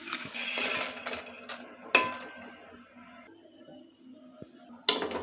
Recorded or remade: recorded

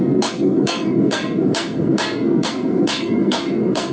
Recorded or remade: remade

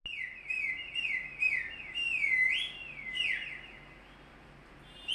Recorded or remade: recorded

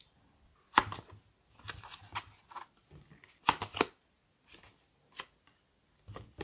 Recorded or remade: recorded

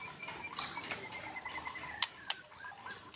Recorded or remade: recorded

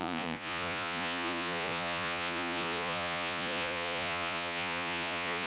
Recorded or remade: remade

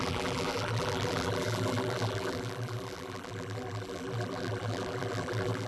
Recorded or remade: remade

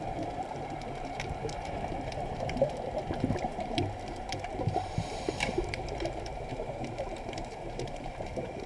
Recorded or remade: remade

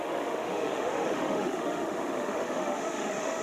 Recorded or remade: remade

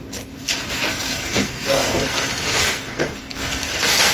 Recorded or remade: remade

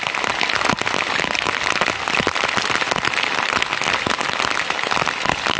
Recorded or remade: recorded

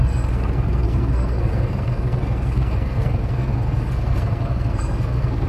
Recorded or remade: remade